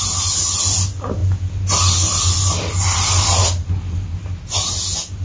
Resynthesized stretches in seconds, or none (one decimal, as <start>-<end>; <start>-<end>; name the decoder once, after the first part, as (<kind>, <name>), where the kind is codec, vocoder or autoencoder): none

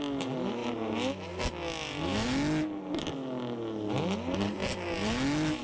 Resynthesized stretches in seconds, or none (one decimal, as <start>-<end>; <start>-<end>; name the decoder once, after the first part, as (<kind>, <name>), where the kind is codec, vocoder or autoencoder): none

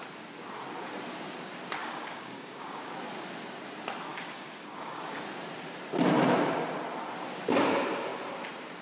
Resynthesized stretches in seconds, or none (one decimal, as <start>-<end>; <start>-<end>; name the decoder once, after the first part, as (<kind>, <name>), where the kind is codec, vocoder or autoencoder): 1.8-2.9 (codec, DAC); 4.1-5.2

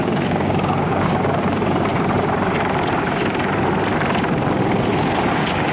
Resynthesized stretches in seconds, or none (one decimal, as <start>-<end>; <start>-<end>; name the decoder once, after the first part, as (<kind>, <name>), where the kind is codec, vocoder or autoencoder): 0.0-1.9 (codec, DAC); 5.3-5.7

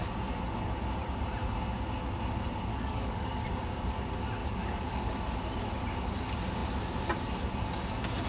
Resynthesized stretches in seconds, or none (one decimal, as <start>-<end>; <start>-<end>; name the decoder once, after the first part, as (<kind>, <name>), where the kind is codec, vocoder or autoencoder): 2.7-3.6 (codec, DAC); 4.4-5.1

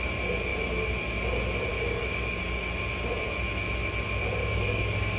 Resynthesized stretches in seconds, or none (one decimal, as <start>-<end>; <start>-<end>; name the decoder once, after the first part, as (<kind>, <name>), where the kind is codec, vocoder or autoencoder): 1.7-2.4 (codec, DAC); 4.4-5.2

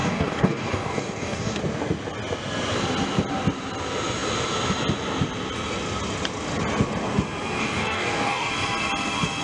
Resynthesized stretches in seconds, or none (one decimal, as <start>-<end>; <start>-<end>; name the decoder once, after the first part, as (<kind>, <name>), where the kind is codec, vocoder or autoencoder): 0.0-1.6 (codec, DAC); 7.6-8.5

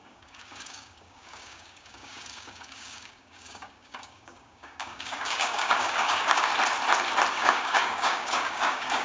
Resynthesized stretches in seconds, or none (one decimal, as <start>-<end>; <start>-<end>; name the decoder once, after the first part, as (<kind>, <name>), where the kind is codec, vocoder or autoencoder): 0.0-6.5 (codec, DAC); 7.3-9.0